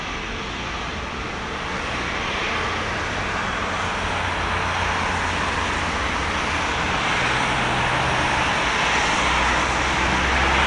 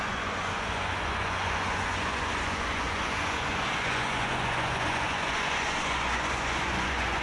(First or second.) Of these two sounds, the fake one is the second